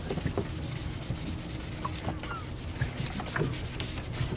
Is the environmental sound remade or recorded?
recorded